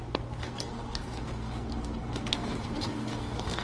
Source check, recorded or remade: remade